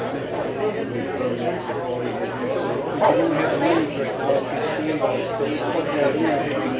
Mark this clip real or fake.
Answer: real